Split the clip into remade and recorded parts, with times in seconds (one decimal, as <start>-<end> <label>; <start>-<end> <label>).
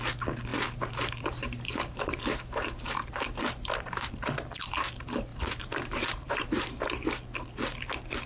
0.0-0.5 recorded; 0.5-4.1 remade; 4.1-5.3 recorded; 5.3-6.8 remade; 6.8-8.3 recorded